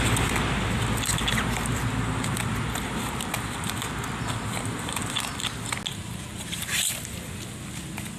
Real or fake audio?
real